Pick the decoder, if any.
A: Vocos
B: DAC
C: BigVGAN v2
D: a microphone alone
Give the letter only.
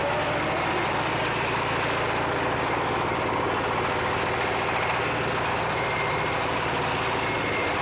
D